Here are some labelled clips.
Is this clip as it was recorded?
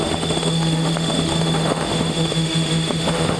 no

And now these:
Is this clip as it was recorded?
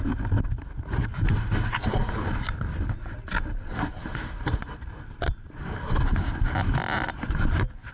yes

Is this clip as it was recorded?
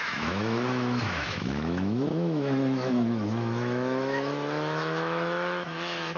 no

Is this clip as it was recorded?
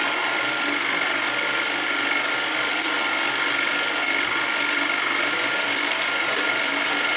no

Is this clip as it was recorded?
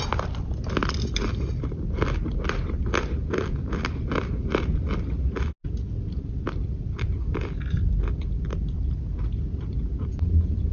yes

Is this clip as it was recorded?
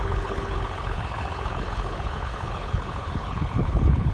no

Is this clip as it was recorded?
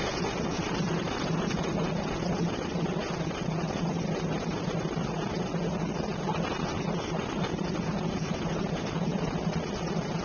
yes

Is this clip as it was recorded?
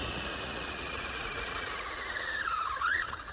no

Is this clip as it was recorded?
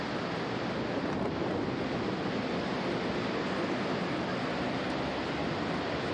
yes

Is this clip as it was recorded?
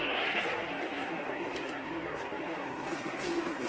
no